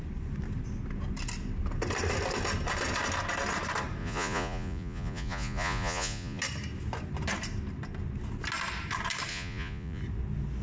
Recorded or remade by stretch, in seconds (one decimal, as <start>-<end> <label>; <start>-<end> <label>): 0.0-4.0 recorded; 4.0-6.4 remade; 6.4-9.3 recorded; 9.3-10.0 remade; 10.0-10.6 recorded